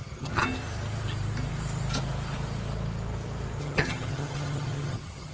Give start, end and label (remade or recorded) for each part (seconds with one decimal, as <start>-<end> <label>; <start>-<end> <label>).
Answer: 0.0-0.4 remade; 0.4-3.6 recorded; 3.6-5.3 remade